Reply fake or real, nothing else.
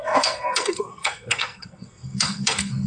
fake